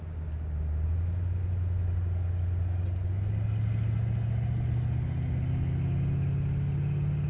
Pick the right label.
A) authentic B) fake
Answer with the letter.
A